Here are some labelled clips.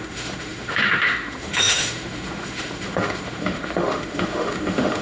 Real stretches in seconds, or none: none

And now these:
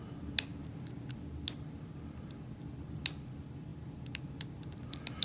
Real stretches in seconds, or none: 0.0-5.2

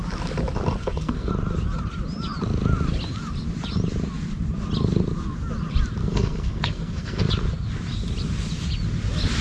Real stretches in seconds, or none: 0.0-0.8; 1.3-6.0; 7.3-9.4

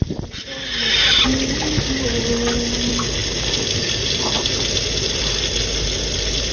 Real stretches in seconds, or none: 0.0-6.5